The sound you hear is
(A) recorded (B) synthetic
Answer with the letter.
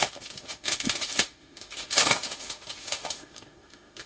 B